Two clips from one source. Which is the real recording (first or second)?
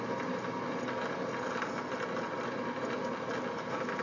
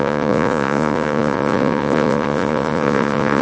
first